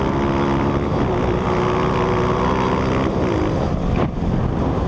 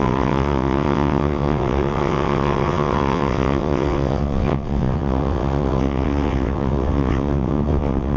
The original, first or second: first